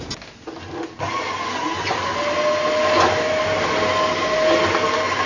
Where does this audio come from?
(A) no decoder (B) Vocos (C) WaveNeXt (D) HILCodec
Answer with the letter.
A